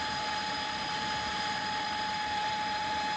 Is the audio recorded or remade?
remade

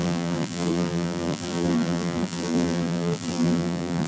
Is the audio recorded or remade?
remade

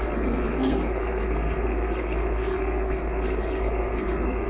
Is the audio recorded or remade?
remade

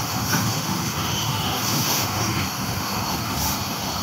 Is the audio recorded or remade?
remade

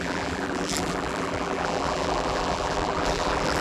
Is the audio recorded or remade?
remade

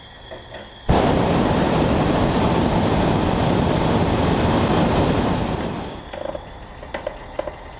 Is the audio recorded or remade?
recorded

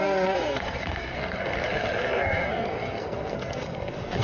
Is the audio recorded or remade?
remade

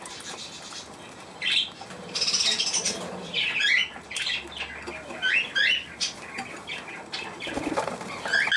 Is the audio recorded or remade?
recorded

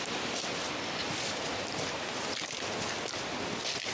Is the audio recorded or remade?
recorded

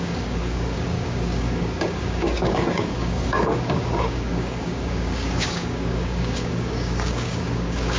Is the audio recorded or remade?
remade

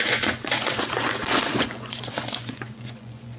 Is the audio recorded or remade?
remade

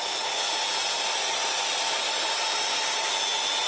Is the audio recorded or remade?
recorded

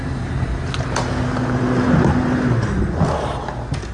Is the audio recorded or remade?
recorded